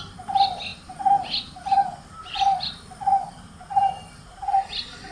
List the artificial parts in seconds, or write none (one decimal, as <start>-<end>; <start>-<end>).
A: none